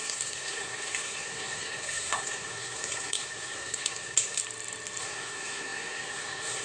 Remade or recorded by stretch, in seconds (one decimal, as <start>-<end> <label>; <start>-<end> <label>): 0.0-4.4 remade; 4.4-5.0 recorded; 5.0-6.6 remade